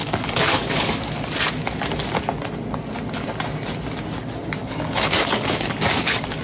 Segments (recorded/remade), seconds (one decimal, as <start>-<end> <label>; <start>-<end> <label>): 0.0-1.1 remade; 1.1-4.6 recorded; 4.6-6.4 remade